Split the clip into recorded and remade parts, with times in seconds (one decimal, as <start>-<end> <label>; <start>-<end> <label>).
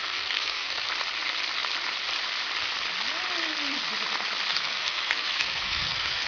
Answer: 0.0-0.9 remade; 0.9-4.5 recorded; 4.5-6.3 remade